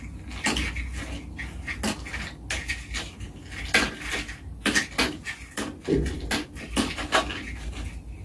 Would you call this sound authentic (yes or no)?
yes